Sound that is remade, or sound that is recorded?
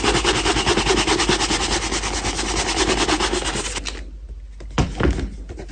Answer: recorded